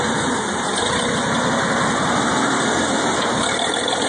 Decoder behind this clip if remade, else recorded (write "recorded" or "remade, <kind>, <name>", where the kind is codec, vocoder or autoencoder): recorded